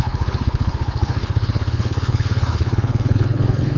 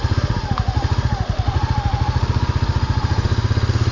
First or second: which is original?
second